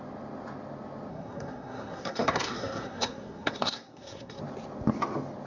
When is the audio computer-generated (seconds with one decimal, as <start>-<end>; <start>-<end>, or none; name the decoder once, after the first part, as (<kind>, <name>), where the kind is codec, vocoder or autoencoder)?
1.1-4.4 (codec, SNAC)